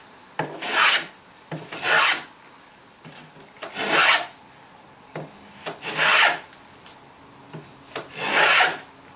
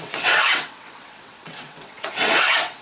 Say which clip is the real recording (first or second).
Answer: first